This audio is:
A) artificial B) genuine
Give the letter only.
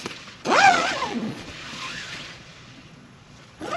A